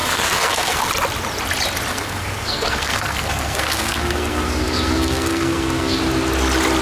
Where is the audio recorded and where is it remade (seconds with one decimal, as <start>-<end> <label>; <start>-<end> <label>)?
0.0-0.9 remade; 0.9-1.9 recorded; 1.9-6.0 remade; 6.0-6.8 recorded